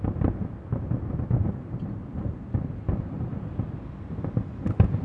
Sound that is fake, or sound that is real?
real